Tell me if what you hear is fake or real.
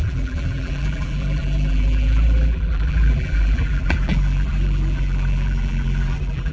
fake